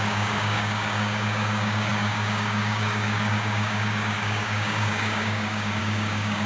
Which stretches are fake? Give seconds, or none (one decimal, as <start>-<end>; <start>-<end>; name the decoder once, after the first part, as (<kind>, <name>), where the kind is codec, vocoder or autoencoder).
0.0-6.5 (codec, DAC)